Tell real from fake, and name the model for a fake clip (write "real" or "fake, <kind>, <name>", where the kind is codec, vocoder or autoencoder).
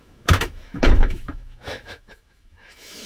fake, autoencoder, DAC-VAE